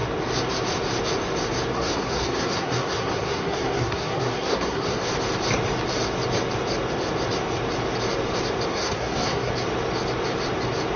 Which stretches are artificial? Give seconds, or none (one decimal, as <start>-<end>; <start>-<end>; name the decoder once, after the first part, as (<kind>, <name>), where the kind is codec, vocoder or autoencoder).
1.7-5.1 (codec, SNAC); 8.7-9.5